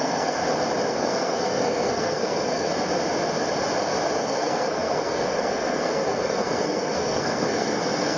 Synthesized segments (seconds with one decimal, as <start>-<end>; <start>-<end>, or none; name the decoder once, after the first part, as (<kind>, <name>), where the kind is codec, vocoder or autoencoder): 0.0-0.4 (codec, SNAC); 0.9-2.7; 4.2-8.2